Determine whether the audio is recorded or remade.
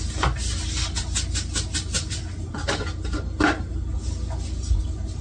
recorded